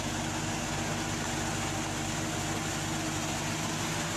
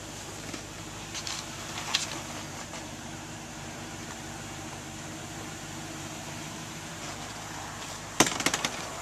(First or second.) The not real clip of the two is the second